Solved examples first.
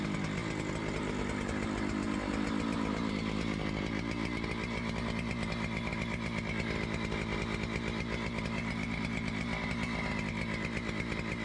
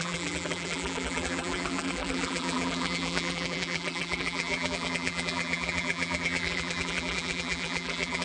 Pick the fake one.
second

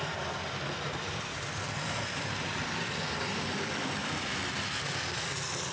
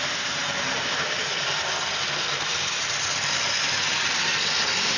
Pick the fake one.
first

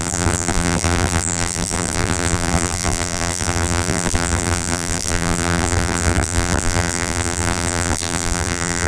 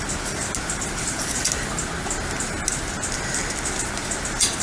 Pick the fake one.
first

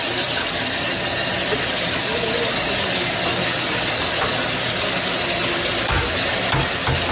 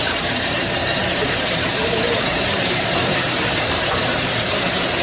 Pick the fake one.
second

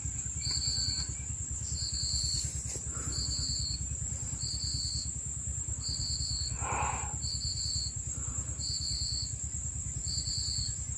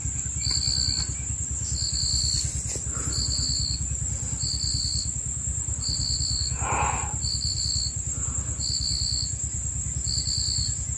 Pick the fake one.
first